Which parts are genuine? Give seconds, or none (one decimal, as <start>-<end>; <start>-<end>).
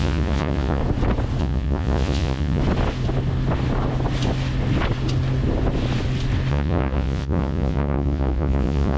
0.8-1.4; 2.6-6.5